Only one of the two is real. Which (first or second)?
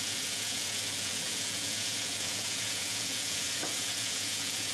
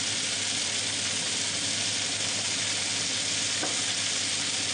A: second